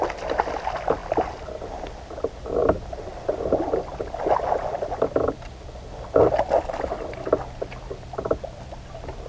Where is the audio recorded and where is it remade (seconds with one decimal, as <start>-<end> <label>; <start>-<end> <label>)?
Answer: 0.0-2.6 recorded; 2.6-6.6 remade; 6.6-9.3 recorded